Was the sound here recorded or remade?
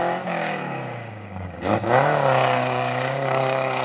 remade